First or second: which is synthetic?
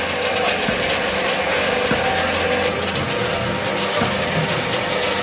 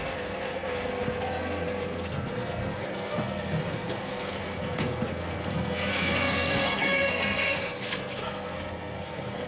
second